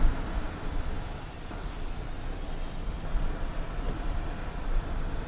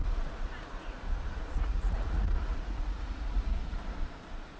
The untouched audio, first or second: first